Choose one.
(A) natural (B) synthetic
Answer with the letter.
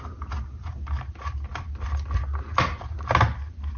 A